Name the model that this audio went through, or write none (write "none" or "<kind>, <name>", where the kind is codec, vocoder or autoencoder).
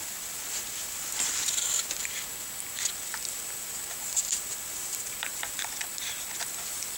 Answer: vocoder, BigVGAN v2